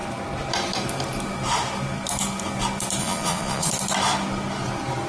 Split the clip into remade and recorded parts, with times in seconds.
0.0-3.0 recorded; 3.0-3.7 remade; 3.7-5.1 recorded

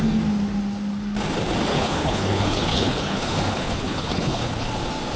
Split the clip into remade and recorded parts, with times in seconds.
0.0-1.7 recorded; 1.7-4.7 remade; 4.7-5.2 recorded

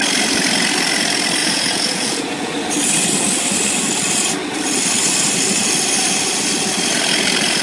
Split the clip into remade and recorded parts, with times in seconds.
0.0-1.4 recorded; 1.4-2.5 remade; 2.5-7.6 recorded

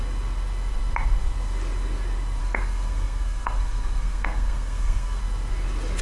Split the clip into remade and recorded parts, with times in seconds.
0.0-2.4 recorded; 2.4-5.2 remade; 5.2-6.0 recorded

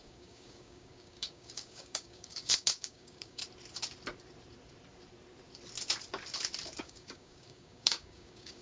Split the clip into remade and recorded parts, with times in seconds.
0.0-3.4 remade; 3.4-6.8 recorded; 6.8-8.6 remade

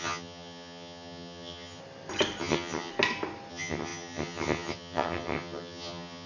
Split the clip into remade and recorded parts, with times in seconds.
0.0-1.8 remade; 1.8-2.4 recorded; 2.4-2.9 remade; 2.9-3.5 recorded; 3.5-6.3 remade